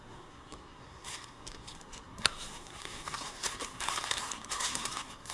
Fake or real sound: fake